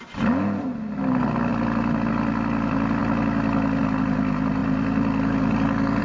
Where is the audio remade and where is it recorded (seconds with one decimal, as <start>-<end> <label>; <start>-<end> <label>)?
0.0-6.0 recorded